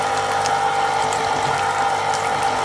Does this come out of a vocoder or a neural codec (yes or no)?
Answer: no